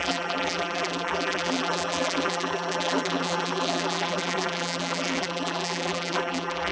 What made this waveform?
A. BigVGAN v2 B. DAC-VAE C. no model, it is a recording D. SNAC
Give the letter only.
A